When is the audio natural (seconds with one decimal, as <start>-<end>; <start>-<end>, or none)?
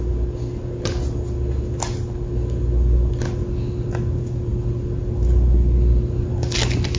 0.0-7.0